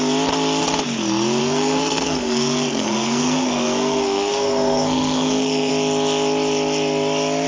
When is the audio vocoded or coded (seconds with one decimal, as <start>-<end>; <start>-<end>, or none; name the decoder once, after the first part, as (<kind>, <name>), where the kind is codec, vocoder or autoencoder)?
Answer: 1.4-5.7 (codec, SNAC)